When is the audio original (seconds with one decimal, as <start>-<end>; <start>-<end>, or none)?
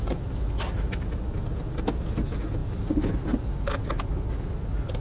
0.0-5.0